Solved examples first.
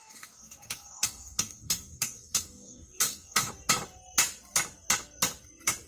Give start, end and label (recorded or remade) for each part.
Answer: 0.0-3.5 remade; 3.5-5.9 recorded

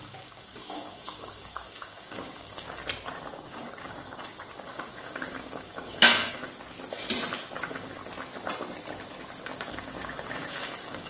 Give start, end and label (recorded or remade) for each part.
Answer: 0.0-2.8 remade; 2.8-3.3 recorded; 3.3-6.4 remade; 6.4-7.6 recorded; 7.6-8.0 remade; 8.0-9.7 recorded; 9.7-11.1 remade

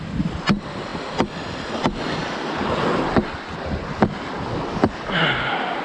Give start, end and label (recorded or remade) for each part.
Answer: 0.0-5.8 recorded

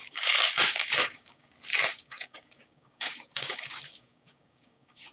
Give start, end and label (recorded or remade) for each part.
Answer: 0.0-1.5 remade; 1.5-1.9 recorded; 1.9-5.1 remade

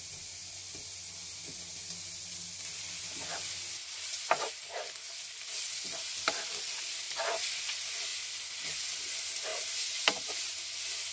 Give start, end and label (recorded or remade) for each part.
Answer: 0.0-11.1 recorded

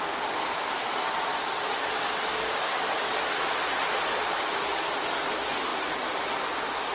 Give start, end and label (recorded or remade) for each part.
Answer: 0.0-2.3 recorded; 2.3-2.9 remade; 2.9-6.9 recorded

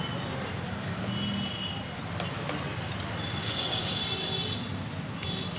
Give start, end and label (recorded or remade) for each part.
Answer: 0.0-3.4 recorded; 3.4-4.0 remade; 4.0-5.6 recorded